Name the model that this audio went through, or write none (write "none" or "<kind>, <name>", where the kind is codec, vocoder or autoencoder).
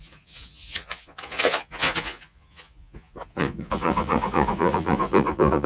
vocoder, Vocos